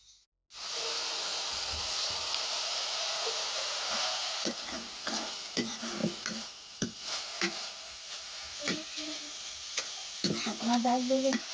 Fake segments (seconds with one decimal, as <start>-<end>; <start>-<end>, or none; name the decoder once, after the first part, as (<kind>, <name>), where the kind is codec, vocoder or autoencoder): none